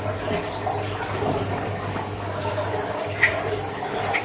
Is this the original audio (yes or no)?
yes